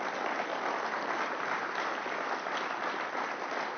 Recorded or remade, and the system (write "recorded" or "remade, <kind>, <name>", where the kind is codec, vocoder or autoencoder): recorded